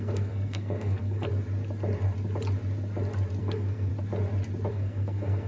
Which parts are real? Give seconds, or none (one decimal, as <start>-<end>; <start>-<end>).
1.3-3.4; 3.9-4.7